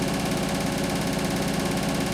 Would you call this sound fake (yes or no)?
no